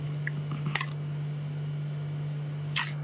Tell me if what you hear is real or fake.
real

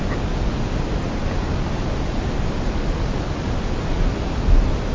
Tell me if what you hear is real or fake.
real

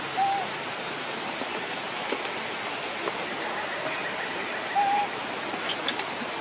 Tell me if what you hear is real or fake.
real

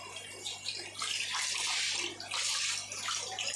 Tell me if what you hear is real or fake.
real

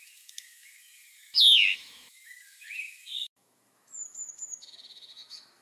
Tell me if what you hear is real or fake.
fake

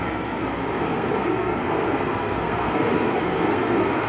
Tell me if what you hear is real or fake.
fake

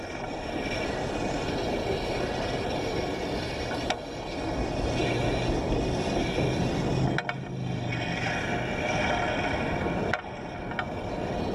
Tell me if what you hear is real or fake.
real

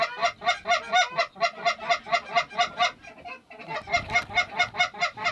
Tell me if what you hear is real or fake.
real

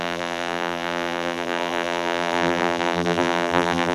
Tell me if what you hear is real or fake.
fake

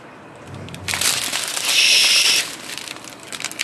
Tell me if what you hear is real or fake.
real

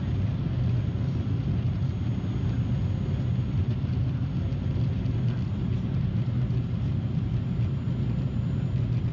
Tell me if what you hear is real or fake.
real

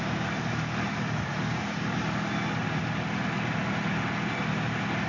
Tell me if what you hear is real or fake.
real